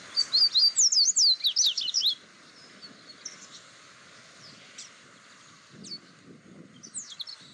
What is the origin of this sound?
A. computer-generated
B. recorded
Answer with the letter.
B